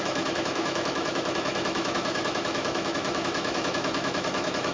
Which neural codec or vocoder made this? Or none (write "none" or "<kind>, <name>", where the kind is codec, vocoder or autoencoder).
autoencoder, DAC-VAE